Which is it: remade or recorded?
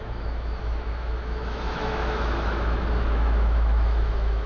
remade